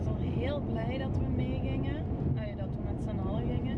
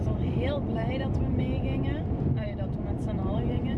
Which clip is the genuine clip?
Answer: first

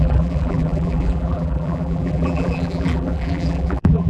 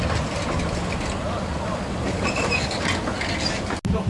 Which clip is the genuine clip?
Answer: second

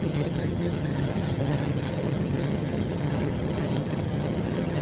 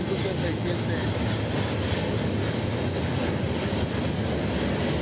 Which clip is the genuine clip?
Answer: second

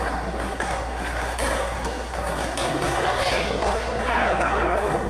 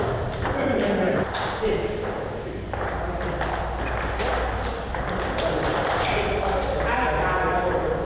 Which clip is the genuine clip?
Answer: second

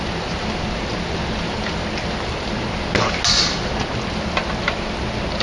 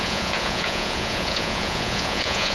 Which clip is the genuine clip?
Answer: first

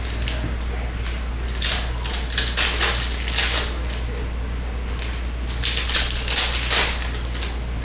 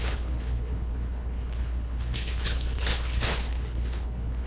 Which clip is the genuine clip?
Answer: first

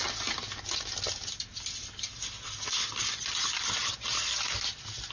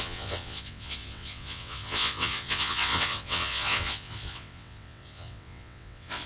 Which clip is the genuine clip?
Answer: first